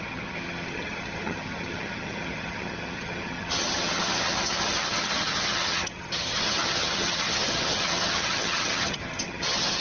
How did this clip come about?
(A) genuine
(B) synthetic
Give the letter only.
B